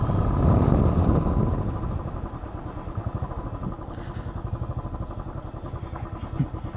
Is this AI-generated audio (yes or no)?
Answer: no